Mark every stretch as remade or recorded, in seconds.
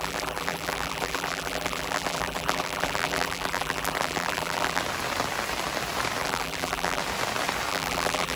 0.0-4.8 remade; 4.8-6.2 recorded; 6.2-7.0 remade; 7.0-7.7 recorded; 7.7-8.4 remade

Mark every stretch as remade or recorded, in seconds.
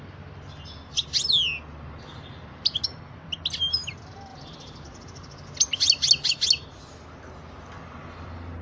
0.0-8.6 recorded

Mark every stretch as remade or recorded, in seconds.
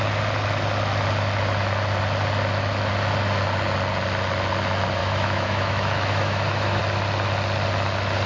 0.0-5.0 recorded; 5.0-6.8 remade; 6.8-8.3 recorded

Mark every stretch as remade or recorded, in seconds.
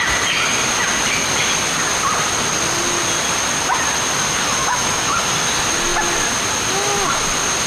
0.0-4.6 recorded; 4.6-5.2 remade; 5.2-7.7 recorded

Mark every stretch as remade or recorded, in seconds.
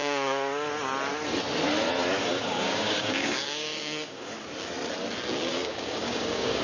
0.0-0.7 remade; 0.7-2.2 recorded; 2.2-4.3 remade; 4.3-5.5 recorded; 5.5-6.6 remade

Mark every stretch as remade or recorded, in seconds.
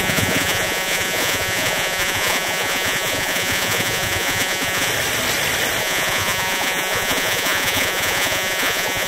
0.0-4.9 remade; 4.9-5.8 recorded; 5.8-9.1 remade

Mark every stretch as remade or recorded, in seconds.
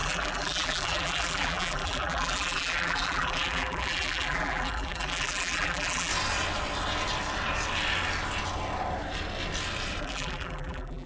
0.0-6.1 remade; 6.1-10.0 recorded; 10.0-11.1 remade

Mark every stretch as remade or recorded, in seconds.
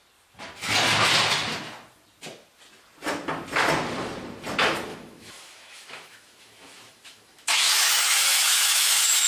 0.0-4.9 recorded; 4.9-9.3 remade